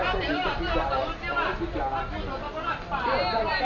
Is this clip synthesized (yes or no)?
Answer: no